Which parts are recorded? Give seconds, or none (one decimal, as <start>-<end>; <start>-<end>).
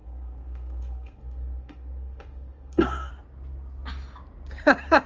3.1-5.1